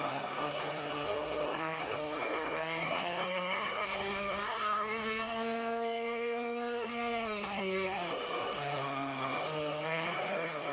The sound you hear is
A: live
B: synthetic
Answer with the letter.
B